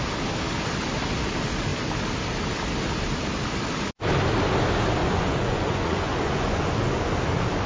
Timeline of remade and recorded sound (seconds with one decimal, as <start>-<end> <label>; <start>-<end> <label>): 0.0-5.0 recorded; 5.0-7.0 remade; 7.0-7.7 recorded